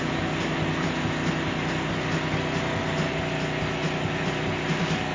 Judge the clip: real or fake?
real